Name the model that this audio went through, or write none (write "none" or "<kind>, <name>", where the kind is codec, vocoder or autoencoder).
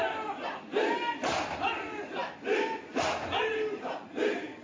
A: none